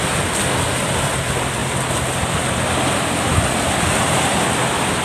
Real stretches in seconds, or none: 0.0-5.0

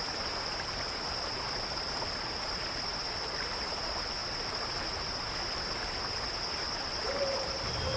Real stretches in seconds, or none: 0.0-8.0

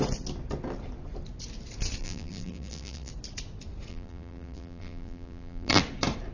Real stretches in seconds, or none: 0.0-2.0; 3.1-3.9; 5.8-6.3